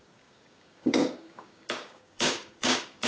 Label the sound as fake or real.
fake